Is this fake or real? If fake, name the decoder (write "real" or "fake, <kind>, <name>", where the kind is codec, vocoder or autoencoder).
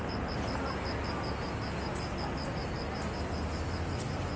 real